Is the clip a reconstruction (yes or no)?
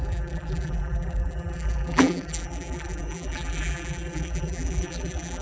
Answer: yes